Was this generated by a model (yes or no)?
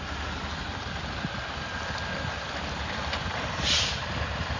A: no